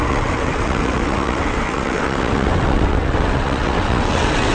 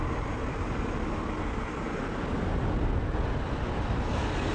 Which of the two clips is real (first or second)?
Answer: second